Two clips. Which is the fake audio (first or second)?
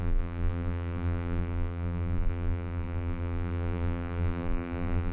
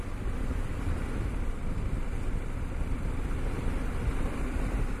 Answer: first